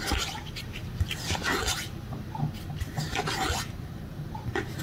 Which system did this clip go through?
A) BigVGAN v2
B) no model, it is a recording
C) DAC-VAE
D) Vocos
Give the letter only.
A